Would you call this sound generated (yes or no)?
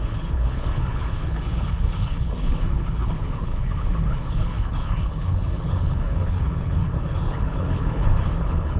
yes